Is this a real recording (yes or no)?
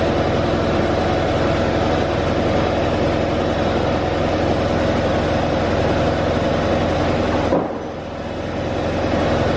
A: yes